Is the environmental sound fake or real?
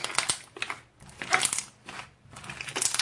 real